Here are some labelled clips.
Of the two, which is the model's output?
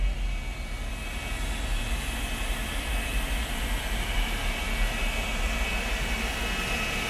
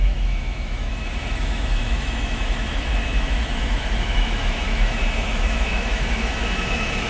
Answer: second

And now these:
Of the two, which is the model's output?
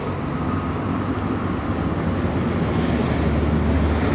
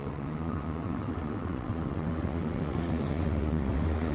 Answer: second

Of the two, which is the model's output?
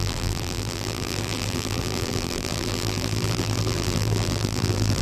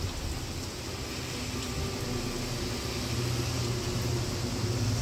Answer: first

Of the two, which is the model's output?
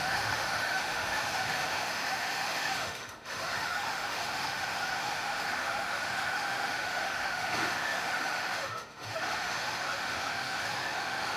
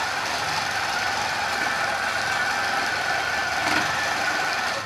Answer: first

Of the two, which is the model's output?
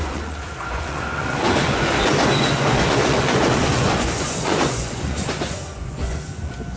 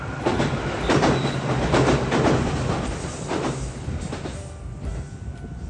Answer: first